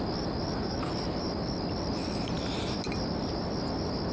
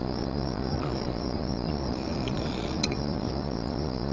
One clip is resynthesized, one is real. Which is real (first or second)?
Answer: first